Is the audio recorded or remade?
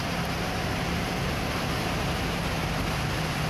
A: recorded